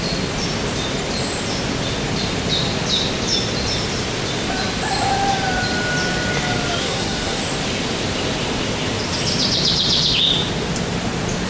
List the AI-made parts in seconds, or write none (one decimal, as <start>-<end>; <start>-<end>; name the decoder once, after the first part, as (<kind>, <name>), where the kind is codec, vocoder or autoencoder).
6.8-7.4 (codec, SNAC)